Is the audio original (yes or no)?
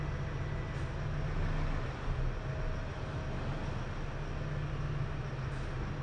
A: yes